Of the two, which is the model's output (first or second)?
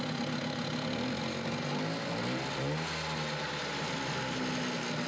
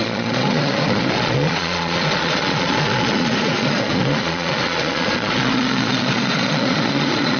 second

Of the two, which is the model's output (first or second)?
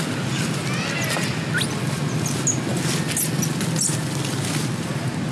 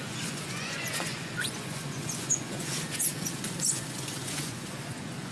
second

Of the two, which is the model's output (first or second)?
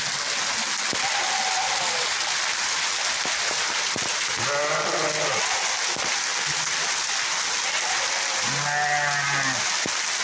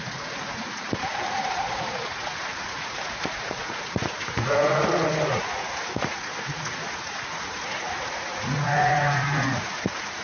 second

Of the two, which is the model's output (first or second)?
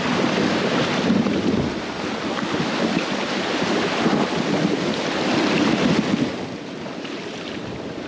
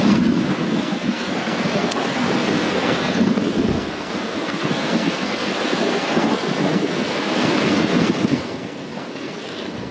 second